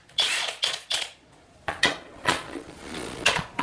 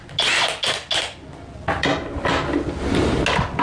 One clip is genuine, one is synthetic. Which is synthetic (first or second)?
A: first